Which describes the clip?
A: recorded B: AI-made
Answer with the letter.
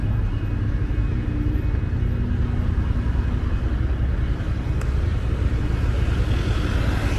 A